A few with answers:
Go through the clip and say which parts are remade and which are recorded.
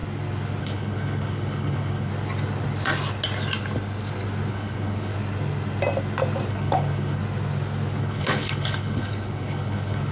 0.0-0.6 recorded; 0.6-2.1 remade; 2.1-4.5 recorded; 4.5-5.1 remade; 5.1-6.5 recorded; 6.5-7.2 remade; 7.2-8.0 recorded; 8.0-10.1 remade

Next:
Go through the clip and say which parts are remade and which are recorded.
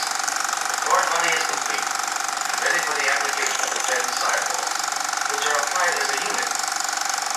0.0-3.4 recorded; 3.4-3.9 remade; 3.9-7.4 recorded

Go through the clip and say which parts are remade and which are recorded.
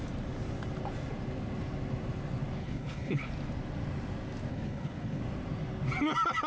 0.0-2.6 recorded; 2.6-3.3 remade; 3.3-4.5 recorded; 4.5-5.2 remade; 5.2-6.5 recorded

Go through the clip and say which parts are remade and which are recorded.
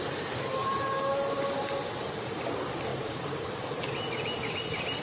0.0-0.6 recorded; 0.6-1.4 remade; 1.4-2.9 recorded; 2.9-3.8 remade; 3.8-5.0 recorded